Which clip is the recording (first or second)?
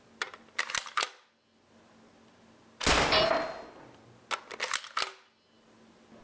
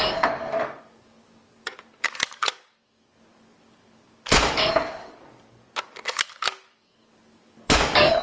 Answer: first